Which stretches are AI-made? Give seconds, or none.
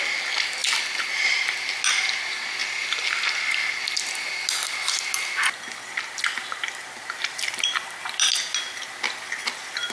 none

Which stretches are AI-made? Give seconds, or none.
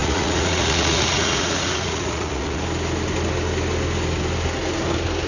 0.0-2.6 (vocoder, Vocos)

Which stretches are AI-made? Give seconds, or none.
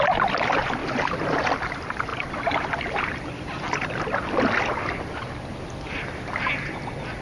0.8-1.7 (vocoder, BigVGAN v2); 2.1-6.4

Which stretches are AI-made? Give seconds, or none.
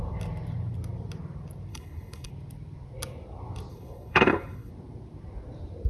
1.7-2.3 (codec, HILCodec); 3.7-4.7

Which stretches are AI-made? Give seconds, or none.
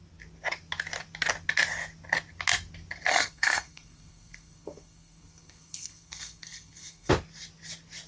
3.1-7.1 (codec, SNAC)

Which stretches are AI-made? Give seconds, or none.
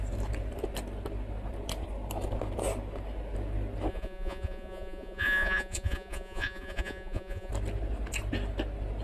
3.9-7.5 (vocoder, Vocos)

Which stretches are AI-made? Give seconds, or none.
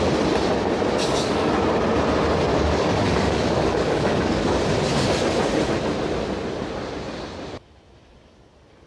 1.0-1.5 (codec, DAC); 2.5-4.6